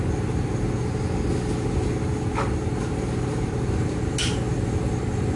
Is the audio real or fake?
real